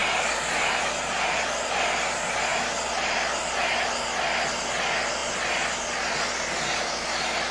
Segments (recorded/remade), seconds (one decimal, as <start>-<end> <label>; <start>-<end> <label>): 0.0-7.5 recorded